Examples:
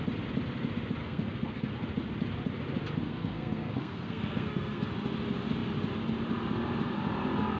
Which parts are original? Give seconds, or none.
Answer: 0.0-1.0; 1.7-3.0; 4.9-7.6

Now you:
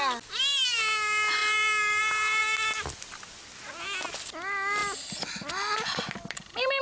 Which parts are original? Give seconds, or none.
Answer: 0.0-6.8

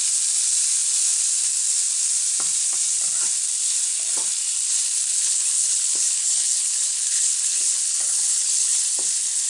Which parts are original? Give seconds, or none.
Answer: 0.0-5.1; 8.8-9.5

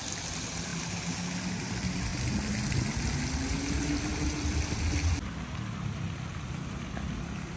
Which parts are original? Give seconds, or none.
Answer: 0.0-7.6